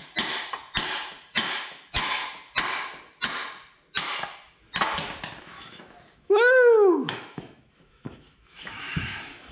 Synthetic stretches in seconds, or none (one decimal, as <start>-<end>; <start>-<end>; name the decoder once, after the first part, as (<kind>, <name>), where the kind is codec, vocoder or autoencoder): 1.3-2.2 (autoencoder, DAC-VAE); 5.4-9.5